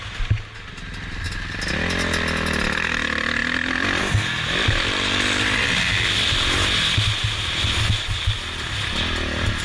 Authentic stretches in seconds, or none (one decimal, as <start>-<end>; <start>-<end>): 0.0-9.6